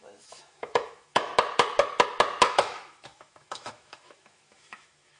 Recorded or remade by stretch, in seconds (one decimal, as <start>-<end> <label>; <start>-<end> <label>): 0.0-1.3 remade; 1.3-2.5 recorded; 2.5-5.2 remade